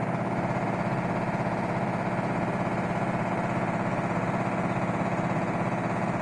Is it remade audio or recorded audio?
recorded